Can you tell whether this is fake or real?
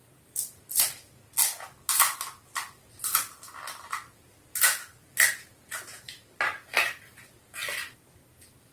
real